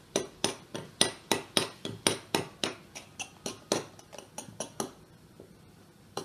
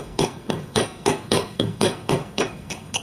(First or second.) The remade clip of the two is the second